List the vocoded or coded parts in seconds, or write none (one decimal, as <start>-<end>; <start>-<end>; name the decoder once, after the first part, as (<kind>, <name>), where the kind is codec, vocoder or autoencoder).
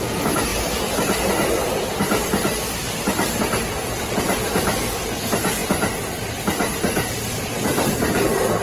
none